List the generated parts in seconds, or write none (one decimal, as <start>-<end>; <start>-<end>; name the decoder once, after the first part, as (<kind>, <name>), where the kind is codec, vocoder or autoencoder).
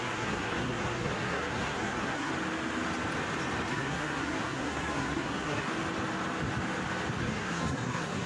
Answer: 0.0-2.3 (codec, SNAC); 3.7-5.7; 7.2-8.3